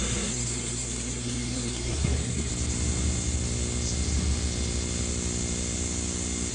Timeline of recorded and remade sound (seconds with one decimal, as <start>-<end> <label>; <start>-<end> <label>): 0.0-2.5 remade; 2.5-6.5 recorded